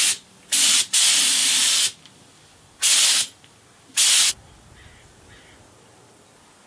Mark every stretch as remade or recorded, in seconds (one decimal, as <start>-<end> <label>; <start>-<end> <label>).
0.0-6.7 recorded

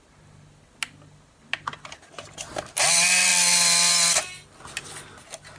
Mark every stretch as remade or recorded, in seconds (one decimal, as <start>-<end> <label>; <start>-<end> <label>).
0.0-5.6 recorded

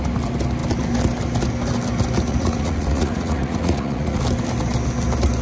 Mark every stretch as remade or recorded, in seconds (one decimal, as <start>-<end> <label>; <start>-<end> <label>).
0.0-2.3 recorded; 2.3-4.2 remade; 4.2-5.4 recorded

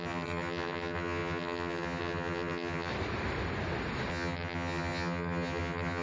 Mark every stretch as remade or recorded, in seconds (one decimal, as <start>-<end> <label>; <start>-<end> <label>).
0.0-2.9 remade; 2.9-4.1 recorded; 4.1-6.0 remade

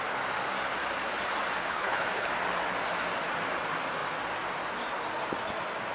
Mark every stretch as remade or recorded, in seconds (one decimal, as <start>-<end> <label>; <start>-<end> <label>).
0.0-1.6 recorded; 1.6-2.3 remade; 2.3-5.9 recorded